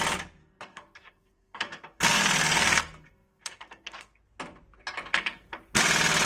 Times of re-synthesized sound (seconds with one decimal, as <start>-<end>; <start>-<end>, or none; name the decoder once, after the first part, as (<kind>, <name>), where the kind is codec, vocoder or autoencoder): 0.4-4.2 (codec, SNAC); 5.1-5.6